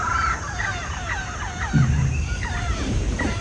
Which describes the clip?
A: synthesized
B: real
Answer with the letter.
A